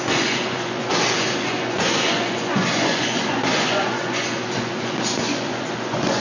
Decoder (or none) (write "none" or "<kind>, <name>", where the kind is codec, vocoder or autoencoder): vocoder, Vocos